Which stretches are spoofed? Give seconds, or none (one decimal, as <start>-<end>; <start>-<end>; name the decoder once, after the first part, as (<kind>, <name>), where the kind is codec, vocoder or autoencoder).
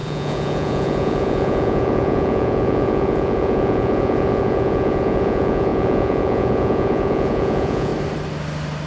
0.0-7.9 (vocoder, Vocos)